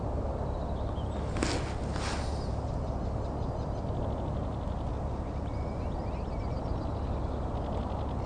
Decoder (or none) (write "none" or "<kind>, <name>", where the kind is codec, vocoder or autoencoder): none